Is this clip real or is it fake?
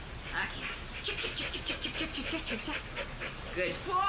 real